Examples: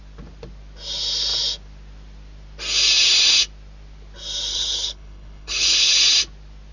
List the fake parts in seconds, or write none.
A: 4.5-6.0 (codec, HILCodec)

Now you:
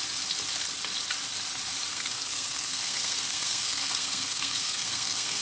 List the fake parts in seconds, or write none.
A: 1.9-5.4 (codec, SNAC)

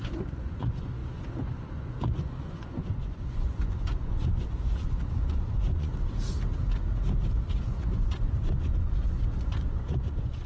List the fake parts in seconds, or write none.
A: 0.0-6.2 (vocoder, Vocos); 7.1-10.5

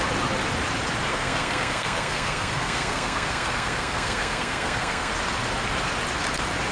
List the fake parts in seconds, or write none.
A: 1.1-5.1 (codec, SNAC)